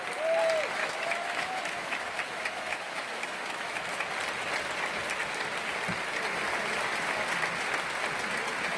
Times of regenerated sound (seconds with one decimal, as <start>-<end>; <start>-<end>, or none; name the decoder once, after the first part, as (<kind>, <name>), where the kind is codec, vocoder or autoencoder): 0.8-4.0 (autoencoder, DAC-VAE)